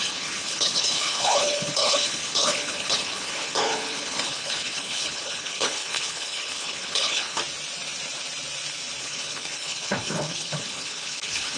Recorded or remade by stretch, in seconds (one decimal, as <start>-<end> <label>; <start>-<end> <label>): 0.0-7.4 remade; 7.4-9.0 recorded; 9.0-11.6 remade